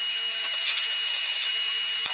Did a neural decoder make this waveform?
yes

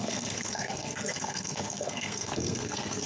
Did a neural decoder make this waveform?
yes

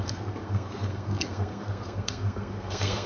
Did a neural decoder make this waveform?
yes